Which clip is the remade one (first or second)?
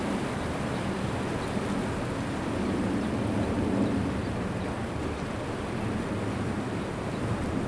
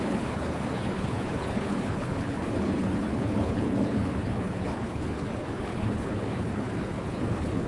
second